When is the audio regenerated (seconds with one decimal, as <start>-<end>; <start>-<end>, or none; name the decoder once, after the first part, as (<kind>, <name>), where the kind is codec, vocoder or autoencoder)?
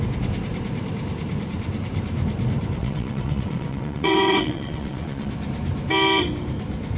2.8-5.3 (vocoder, WaveNeXt)